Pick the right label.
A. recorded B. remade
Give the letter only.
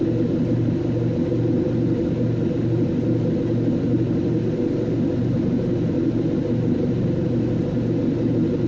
A